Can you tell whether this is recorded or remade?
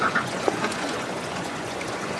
remade